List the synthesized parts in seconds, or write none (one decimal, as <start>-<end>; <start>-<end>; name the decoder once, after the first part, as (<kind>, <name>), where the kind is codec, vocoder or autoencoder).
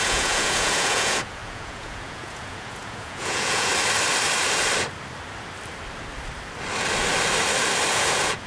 0.0-3.7 (vocoder, Vocos); 7.9-8.5